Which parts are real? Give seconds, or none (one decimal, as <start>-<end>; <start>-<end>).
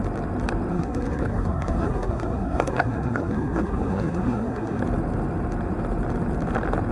0.0-0.7; 4.8-6.9